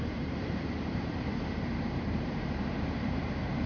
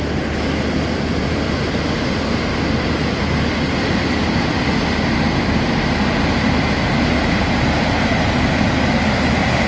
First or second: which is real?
second